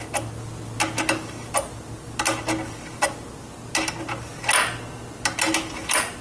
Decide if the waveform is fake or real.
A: real